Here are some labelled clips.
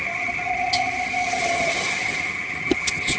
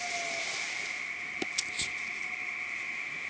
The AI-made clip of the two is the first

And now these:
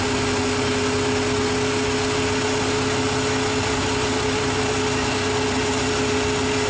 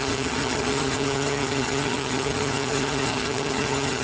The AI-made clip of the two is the second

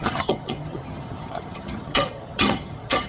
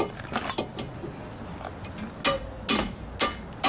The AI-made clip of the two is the first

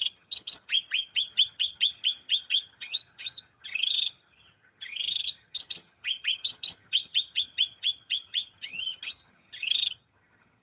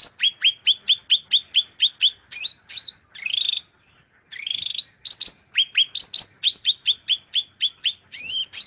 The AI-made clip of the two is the first